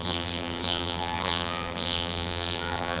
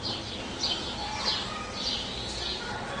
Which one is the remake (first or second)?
first